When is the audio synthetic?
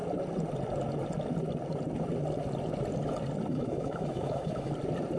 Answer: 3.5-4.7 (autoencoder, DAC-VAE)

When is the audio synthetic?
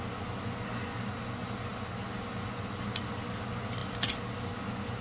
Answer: none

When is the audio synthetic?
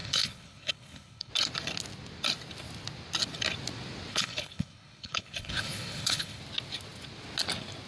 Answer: 0.0-1.3 (codec, HILCodec); 4.1-6.4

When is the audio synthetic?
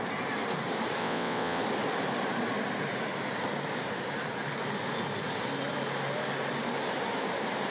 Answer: 1.0-1.6 (vocoder, WaveNeXt)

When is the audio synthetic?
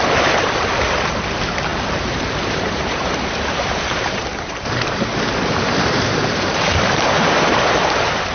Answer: 1.1-8.3 (vocoder, BigVGAN v2)